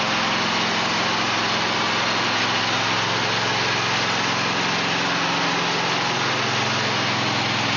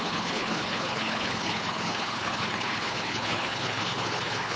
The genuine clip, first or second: first